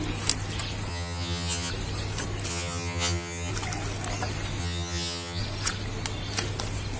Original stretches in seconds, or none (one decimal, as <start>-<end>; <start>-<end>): 0.0-0.9; 1.7-2.5; 3.5-4.6; 5.4-7.0

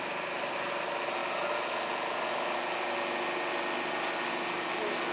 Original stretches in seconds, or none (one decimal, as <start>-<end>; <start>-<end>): 0.0-5.1

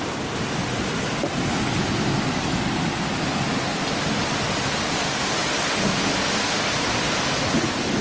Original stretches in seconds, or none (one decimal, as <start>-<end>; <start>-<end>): 0.0-8.0

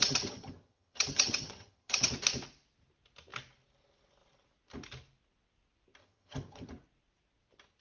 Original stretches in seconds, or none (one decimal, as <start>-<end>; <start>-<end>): 2.1-6.0; 6.7-7.8

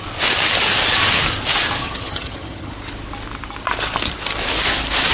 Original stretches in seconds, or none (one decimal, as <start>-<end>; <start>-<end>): 0.0-1.8; 2.7-5.1

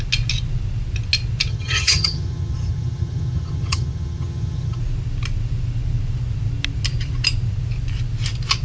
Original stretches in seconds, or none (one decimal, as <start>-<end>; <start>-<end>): 0.0-1.5; 4.8-8.6